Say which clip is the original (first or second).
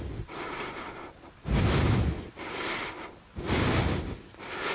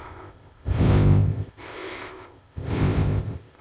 first